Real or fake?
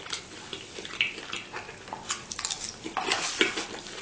real